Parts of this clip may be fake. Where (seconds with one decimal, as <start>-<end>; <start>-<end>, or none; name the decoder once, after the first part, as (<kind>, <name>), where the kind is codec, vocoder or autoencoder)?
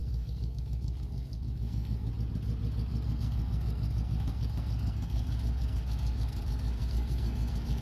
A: 0.0-2.1 (codec, SNAC); 2.9-7.8